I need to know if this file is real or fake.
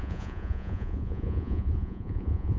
fake